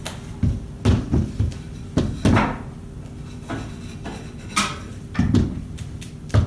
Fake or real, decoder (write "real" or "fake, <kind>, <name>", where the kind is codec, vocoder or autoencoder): real